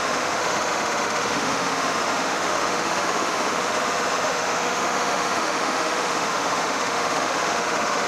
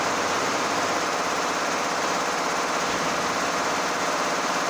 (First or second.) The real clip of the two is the second